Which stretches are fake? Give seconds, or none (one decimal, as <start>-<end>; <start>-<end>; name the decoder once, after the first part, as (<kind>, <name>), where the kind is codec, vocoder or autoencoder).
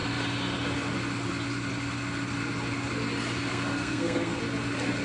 3.5-4.4 (codec, SNAC)